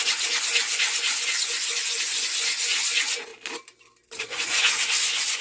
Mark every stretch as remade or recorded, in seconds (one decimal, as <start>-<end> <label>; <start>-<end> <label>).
0.0-3.3 remade; 3.3-4.2 recorded; 4.2-5.4 remade